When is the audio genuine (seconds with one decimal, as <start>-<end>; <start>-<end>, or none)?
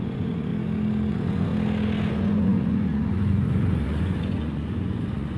0.5-1.1; 1.5-2.1